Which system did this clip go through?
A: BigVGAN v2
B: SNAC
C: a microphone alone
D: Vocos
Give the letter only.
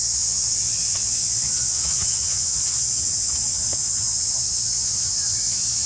D